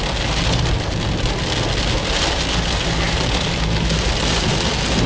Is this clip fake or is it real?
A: real